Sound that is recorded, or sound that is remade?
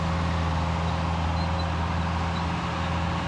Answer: recorded